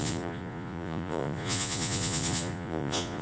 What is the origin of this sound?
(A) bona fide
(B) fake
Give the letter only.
B